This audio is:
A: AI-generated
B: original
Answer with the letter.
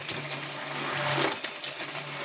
B